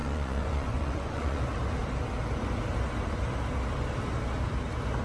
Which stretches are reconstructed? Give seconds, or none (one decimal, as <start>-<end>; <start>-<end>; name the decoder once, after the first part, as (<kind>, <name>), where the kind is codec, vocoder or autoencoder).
0.0-1.4 (vocoder, Vocos)